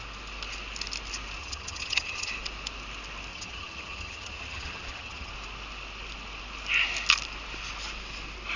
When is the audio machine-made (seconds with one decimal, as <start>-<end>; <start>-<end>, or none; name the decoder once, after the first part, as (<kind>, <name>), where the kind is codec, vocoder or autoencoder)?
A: 1.4-2.3 (vocoder, HiFi-GAN); 3.3-5.3

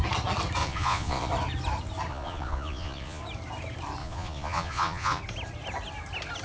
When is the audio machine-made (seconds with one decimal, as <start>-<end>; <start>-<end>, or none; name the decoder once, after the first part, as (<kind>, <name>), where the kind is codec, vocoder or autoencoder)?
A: 0.6-1.3 (vocoder, Vocos); 2.1-3.2; 4.0-5.2

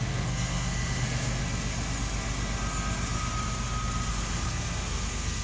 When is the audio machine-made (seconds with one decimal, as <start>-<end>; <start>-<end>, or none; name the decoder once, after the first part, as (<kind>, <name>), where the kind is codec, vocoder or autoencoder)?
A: 0.0-1.4 (codec, SNAC); 4.1-5.4

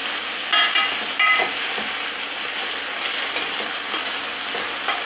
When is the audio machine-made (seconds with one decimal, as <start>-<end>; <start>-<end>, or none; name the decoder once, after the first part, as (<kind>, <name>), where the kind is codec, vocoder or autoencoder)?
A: none

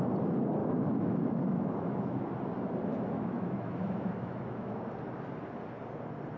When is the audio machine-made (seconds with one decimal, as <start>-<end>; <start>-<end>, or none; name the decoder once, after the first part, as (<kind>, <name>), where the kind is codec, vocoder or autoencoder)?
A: 0.6-2.3 (autoencoder, DAC-VAE); 2.9-4.8

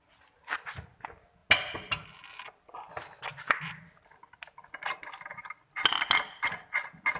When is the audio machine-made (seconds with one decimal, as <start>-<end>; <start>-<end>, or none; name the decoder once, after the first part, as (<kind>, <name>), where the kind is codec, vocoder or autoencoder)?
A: none

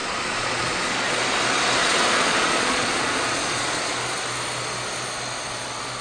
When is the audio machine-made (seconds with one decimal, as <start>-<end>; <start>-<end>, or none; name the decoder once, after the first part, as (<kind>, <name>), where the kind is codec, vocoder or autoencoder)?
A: 0.0-1.2 (vocoder, Vocos); 1.8-4.0

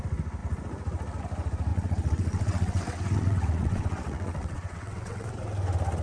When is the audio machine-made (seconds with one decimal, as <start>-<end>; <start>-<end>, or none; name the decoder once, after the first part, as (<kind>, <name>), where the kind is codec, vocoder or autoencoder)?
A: 1.7-5.3 (vocoder, WaveNeXt)